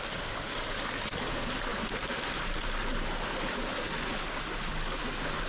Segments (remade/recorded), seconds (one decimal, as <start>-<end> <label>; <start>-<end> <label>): 0.0-5.5 recorded